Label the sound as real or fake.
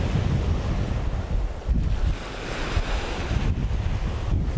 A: real